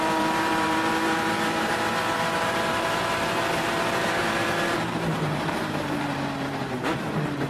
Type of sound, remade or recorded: remade